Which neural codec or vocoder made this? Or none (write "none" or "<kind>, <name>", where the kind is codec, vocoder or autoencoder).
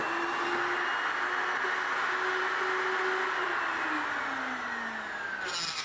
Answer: none